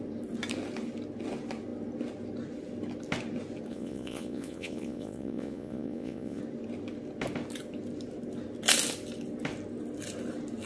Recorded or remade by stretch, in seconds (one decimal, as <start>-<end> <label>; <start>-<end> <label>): 0.0-3.7 recorded; 3.7-6.4 remade; 6.4-10.7 recorded